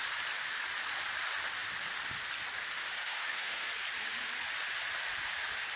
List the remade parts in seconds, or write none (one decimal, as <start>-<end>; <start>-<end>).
3.0-3.7